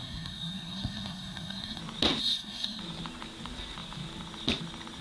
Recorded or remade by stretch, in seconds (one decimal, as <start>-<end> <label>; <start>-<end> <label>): 0.0-1.8 remade; 1.8-2.2 recorded; 2.2-2.8 remade; 2.8-5.0 recorded